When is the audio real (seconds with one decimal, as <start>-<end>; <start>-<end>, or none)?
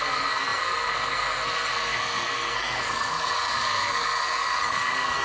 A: none